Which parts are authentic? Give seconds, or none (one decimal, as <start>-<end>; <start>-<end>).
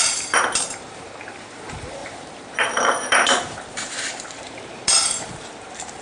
none